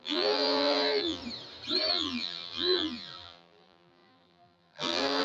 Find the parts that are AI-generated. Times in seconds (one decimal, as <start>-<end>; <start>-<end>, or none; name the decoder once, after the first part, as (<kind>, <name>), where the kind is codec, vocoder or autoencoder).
0.0-1.2 (vocoder, BigVGAN v2); 1.9-5.2